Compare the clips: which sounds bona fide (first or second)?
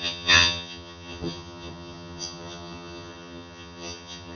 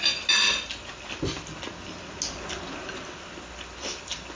second